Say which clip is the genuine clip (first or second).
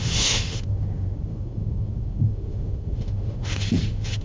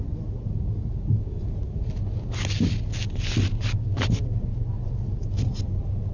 second